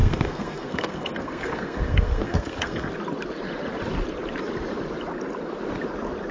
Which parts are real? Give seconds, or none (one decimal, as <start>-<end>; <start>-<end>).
2.9-6.3

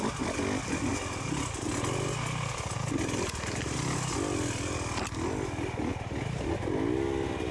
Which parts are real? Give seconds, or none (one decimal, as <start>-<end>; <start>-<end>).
0.0-7.5

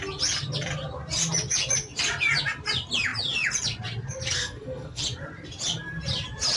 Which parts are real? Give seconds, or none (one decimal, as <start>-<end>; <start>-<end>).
0.0-4.4; 5.0-6.6

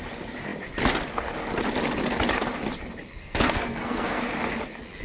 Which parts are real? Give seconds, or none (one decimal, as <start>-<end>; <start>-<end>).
0.0-3.2; 4.2-5.0

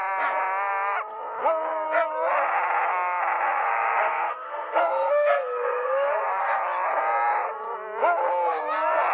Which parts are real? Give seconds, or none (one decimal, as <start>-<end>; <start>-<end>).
0.0-3.6; 6.6-9.1

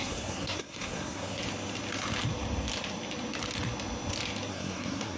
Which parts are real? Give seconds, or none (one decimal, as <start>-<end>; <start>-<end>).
1.4-4.5

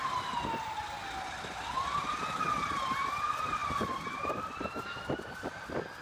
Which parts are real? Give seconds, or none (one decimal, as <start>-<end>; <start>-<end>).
0.0-6.0

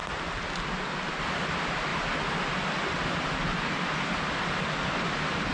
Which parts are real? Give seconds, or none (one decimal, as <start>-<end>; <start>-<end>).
0.0-5.5